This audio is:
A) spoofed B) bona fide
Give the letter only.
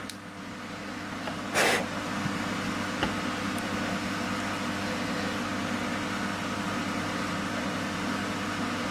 B